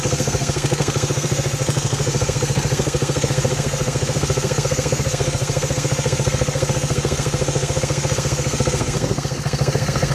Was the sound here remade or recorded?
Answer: remade